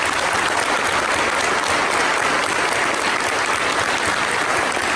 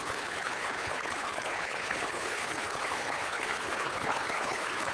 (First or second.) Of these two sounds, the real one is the first